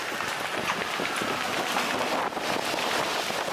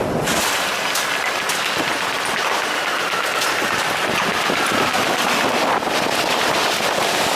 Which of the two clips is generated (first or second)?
second